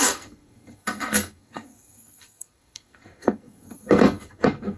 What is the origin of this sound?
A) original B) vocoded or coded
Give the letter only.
B